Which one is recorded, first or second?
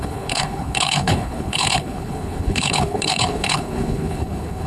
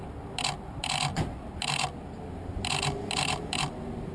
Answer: second